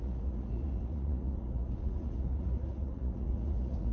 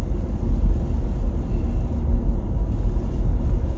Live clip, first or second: second